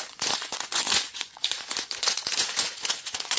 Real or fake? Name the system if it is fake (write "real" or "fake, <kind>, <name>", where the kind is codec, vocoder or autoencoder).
fake, vocoder, Vocos